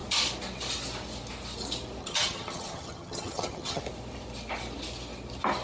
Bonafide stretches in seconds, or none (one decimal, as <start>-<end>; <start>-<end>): 0.0-2.0; 3.8-5.6